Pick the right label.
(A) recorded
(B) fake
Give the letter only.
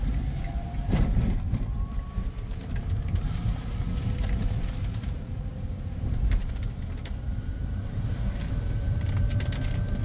B